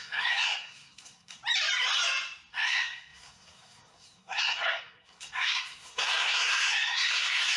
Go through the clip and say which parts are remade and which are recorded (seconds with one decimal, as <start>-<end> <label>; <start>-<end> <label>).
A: 0.0-1.4 remade; 1.4-2.5 recorded; 2.5-7.6 remade